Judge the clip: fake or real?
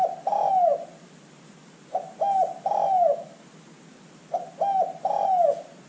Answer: real